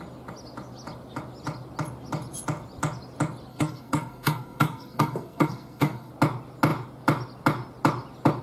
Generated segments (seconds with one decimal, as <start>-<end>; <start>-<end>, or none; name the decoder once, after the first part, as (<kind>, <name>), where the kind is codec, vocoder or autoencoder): 3.5-6.1 (codec, SNAC)